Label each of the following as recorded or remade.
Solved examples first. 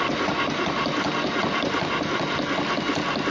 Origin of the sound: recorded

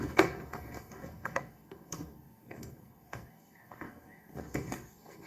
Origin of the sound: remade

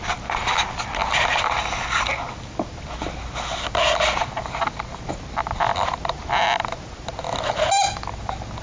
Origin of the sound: recorded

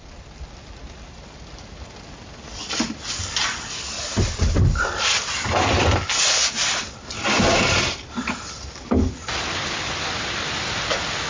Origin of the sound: recorded